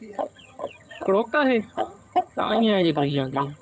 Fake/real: fake